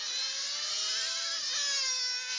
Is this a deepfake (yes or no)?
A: no